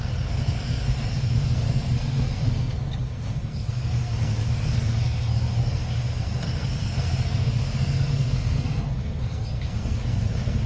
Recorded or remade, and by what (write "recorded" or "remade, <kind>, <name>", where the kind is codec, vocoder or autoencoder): remade, codec, SNAC